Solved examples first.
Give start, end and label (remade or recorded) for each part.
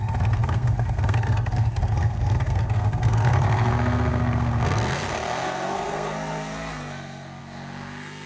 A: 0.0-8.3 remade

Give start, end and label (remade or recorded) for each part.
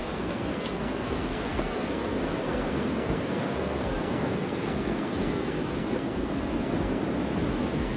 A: 0.0-7.0 remade; 7.0-7.6 recorded; 7.6-8.0 remade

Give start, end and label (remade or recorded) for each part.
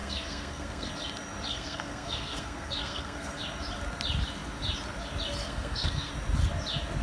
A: 0.0-0.9 remade; 0.9-1.5 recorded; 1.5-3.4 remade; 3.4-5.4 recorded; 5.4-6.1 remade; 6.1-7.0 recorded